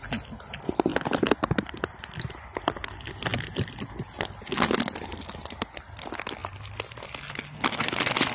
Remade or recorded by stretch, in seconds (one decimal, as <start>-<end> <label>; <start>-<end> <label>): 0.0-8.3 recorded